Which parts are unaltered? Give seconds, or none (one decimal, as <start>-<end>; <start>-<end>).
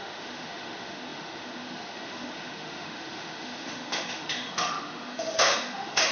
none